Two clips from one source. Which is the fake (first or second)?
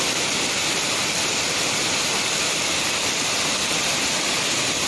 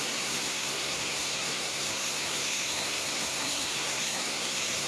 second